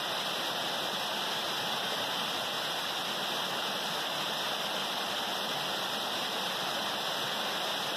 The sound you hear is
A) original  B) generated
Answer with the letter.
A